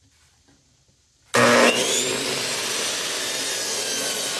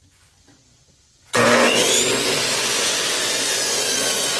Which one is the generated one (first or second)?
second